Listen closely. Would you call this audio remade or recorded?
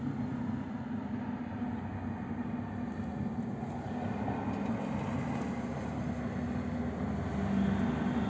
recorded